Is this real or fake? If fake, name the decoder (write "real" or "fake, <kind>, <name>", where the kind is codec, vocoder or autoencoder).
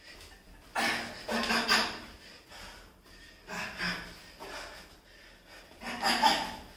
real